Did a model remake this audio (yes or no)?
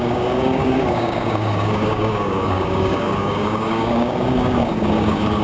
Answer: yes